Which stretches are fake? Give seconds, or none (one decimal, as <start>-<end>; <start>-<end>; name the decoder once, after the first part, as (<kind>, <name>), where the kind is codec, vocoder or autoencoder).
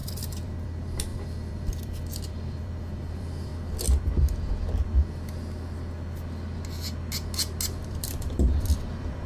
0.0-3.5 (vocoder, BigVGAN v2); 7.8-9.3